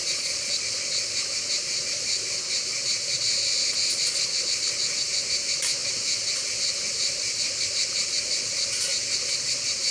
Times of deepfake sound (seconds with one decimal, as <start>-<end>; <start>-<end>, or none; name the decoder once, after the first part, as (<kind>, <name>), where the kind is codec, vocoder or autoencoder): 0.0-0.5 (vocoder, Vocos)